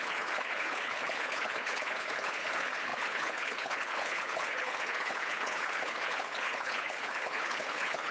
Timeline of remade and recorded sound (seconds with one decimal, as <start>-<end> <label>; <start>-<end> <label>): 0.0-8.1 remade